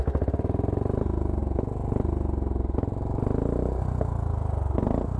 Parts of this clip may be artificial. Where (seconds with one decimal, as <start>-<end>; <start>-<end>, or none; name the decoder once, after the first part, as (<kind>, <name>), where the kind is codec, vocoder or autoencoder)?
0.0-1.4 (vocoder, BigVGAN v2); 2.6-5.2